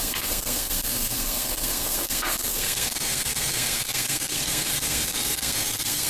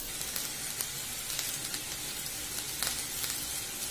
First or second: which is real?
second